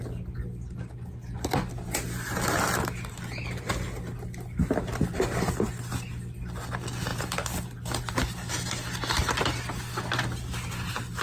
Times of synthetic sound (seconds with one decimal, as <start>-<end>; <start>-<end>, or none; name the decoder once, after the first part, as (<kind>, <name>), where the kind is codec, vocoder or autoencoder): none